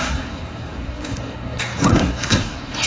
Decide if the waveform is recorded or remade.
remade